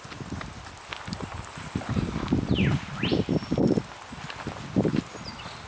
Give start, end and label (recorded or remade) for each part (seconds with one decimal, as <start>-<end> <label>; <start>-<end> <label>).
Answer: 0.0-5.7 recorded